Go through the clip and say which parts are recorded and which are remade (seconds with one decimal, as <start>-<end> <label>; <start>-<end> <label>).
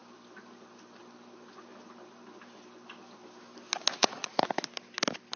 0.0-4.0 recorded; 4.0-4.6 remade; 4.6-5.4 recorded